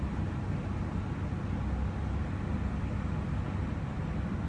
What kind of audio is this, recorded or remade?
recorded